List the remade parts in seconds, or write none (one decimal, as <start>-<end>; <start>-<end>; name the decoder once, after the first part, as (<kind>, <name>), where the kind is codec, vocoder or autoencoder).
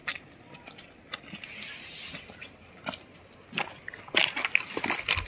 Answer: none